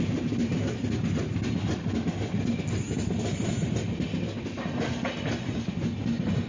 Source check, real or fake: real